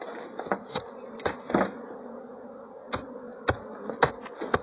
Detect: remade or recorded recorded